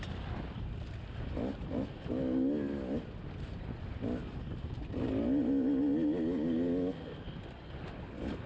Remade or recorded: recorded